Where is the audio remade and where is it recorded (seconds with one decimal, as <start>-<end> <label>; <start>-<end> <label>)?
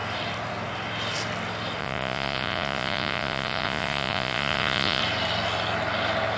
0.0-1.8 recorded; 1.8-5.0 remade; 5.0-6.4 recorded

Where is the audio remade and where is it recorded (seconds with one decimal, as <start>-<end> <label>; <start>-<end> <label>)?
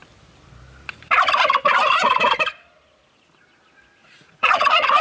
0.0-4.0 recorded; 4.0-5.0 remade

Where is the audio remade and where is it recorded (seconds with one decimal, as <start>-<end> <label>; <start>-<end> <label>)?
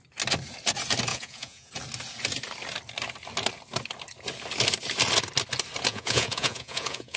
0.0-1.1 recorded; 1.1-1.7 remade; 1.7-5.9 recorded; 5.9-7.2 remade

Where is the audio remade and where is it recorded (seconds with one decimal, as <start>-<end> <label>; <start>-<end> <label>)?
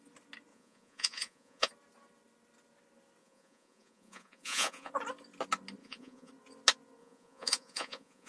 0.0-0.5 recorded; 0.5-1.7 remade; 1.7-3.2 recorded; 3.2-4.9 remade; 4.9-5.8 recorded; 5.8-6.3 remade; 6.3-7.0 recorded; 7.0-8.3 remade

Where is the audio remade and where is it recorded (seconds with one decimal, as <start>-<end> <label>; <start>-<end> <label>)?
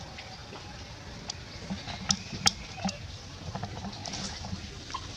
0.0-5.2 recorded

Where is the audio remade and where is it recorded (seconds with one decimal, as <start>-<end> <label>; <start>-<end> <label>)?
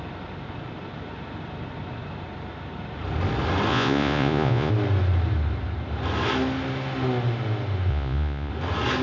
0.0-3.7 recorded; 3.7-4.7 remade; 4.7-7.9 recorded; 7.9-8.5 remade; 8.5-9.0 recorded